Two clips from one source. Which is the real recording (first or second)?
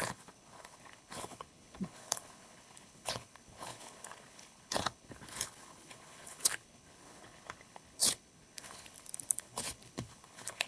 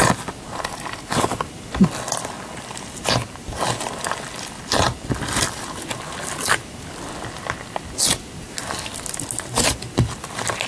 second